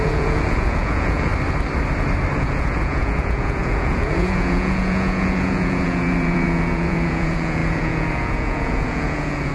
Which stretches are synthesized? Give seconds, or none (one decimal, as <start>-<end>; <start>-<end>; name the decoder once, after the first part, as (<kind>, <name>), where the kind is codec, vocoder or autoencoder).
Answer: 0.0-1.3 (vocoder, Vocos); 2.4-9.5